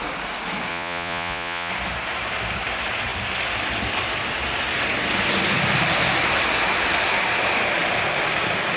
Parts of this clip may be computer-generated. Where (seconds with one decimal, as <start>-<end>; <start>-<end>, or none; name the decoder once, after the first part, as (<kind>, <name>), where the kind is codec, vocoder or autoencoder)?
0.7-1.7 (vocoder, Vocos)